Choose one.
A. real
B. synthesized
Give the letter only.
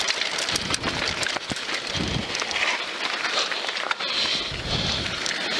A